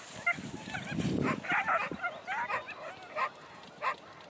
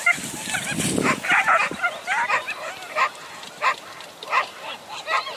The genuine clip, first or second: first